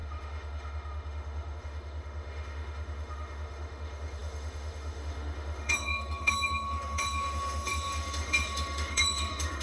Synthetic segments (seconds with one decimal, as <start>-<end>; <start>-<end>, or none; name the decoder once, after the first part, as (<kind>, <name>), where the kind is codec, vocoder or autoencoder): 0.0-9.6 (autoencoder, DAC-VAE)